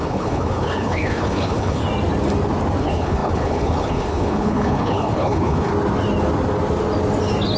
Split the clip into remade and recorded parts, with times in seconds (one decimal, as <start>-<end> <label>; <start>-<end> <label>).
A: 0.0-1.8 remade; 1.8-2.8 recorded; 2.8-5.7 remade; 5.7-7.6 recorded